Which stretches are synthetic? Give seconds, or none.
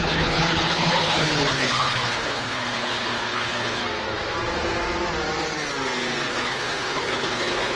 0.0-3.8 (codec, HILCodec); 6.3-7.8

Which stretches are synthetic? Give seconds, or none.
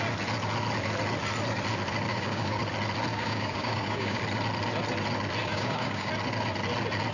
2.1-2.6 (codec, DAC); 3.1-4.2; 5.4-6.1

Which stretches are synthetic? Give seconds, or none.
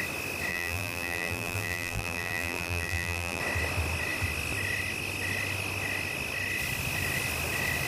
0.5-3.4 (vocoder, BigVGAN v2)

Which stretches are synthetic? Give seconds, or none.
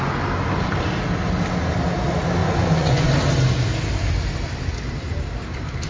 2.4-3.1 (vocoder, Vocos)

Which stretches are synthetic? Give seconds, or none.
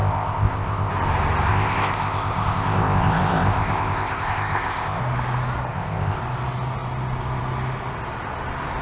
0.0-0.9 (codec, ZipCodec); 1.5-5.0; 5.7-6.2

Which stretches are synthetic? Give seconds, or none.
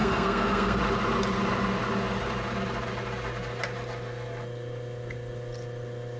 0.0-0.8 (codec, SNAC)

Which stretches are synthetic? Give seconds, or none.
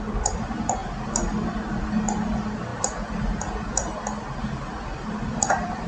none